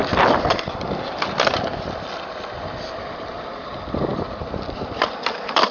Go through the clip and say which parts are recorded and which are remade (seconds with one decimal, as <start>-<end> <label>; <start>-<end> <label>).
0.0-4.1 remade; 4.1-4.9 recorded; 4.9-5.7 remade